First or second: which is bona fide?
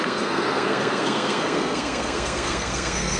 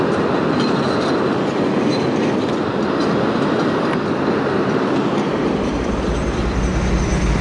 second